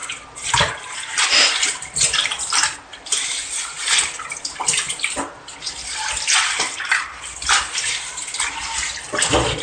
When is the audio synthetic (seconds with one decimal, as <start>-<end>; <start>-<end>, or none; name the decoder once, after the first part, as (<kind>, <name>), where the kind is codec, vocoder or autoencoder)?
none